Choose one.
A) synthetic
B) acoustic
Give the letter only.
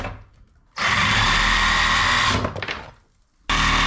B